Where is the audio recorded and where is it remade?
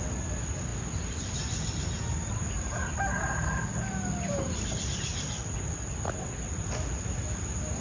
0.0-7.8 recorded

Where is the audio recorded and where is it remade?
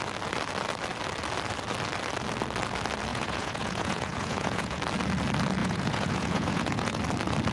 0.0-3.1 recorded; 3.1-4.8 remade; 4.8-5.6 recorded; 5.6-7.0 remade; 7.0-7.5 recorded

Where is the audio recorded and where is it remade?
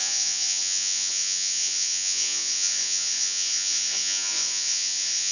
0.0-5.3 remade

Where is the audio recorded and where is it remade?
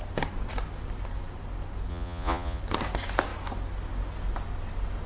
0.0-1.9 recorded; 1.9-2.6 remade; 2.6-5.1 recorded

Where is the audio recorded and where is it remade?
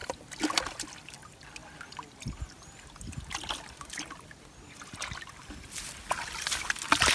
0.0-7.1 recorded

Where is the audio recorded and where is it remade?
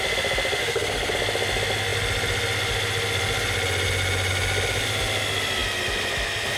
0.0-0.6 recorded; 0.6-1.1 remade; 1.1-6.6 recorded